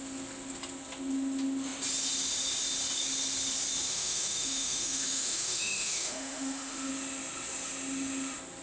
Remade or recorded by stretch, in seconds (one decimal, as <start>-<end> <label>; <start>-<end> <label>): 0.0-3.9 recorded; 3.9-6.9 remade; 6.9-8.6 recorded